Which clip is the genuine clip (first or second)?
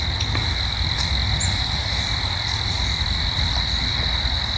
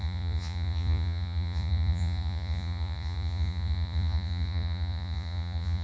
first